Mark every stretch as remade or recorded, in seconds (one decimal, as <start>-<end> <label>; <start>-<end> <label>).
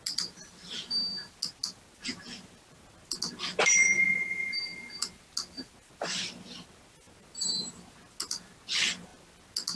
0.0-9.8 recorded